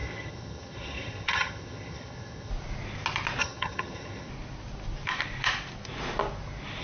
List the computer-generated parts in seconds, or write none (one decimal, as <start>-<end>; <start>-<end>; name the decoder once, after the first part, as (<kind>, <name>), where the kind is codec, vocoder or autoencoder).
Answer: 0.0-2.5 (vocoder, HiFi-GAN); 3.4-4.3